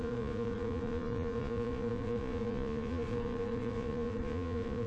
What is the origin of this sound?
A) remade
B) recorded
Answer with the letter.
A